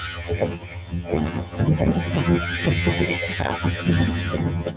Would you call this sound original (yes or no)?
no